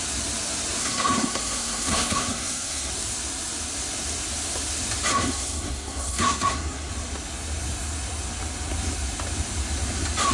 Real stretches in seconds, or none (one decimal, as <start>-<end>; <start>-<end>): 0.0-0.8; 2.9-5.1; 6.9-10.3

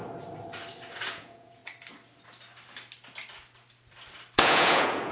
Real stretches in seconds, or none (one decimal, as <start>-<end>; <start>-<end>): 0.0-1.1; 1.6-4.4